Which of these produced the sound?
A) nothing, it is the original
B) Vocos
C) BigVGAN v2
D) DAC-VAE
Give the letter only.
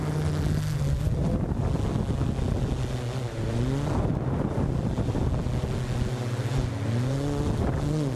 A